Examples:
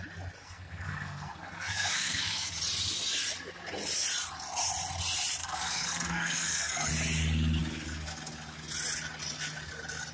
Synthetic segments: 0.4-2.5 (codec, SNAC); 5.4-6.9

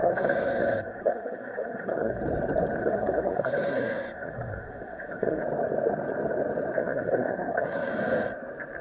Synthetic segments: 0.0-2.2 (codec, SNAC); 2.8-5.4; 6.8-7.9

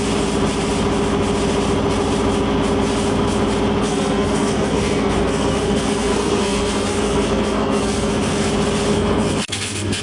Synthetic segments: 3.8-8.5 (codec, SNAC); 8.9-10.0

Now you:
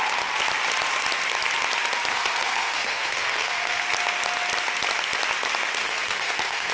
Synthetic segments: 2.1-3.8 (codec, SNAC); 5.8-6.7

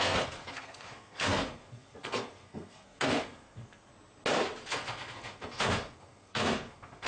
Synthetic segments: 0.0-3.9 (codec, SNAC); 4.7-7.1